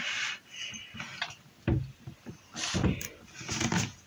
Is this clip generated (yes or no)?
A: no